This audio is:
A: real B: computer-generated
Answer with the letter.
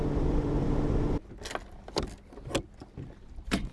A